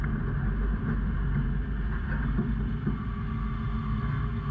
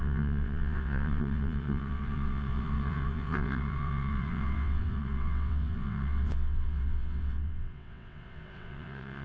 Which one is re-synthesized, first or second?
second